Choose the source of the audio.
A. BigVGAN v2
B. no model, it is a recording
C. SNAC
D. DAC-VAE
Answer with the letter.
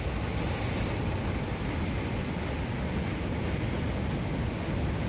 B